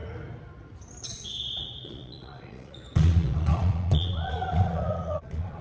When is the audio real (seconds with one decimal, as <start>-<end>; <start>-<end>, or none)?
0.0-1.0